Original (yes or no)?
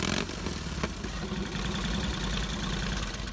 yes